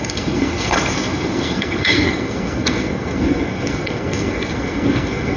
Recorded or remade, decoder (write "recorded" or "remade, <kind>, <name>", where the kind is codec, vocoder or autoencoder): remade, codec, SNAC